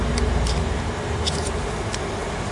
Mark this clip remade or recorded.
recorded